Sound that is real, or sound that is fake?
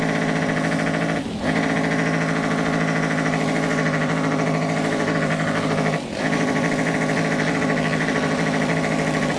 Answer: real